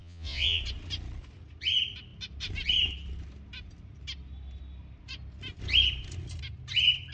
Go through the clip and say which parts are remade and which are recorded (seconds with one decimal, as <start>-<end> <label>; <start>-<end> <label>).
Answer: 0.0-0.6 remade; 0.6-7.1 recorded